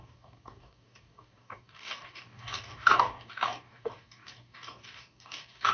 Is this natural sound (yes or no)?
no